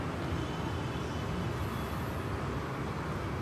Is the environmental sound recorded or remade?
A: recorded